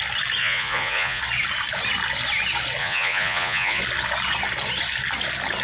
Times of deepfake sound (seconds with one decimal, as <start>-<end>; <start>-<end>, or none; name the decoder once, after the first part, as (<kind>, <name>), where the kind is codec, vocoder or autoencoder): 0.4-1.2 (vocoder, Vocos); 2.8-3.8